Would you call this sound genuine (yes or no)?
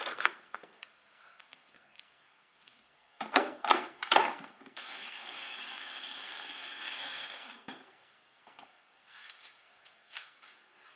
no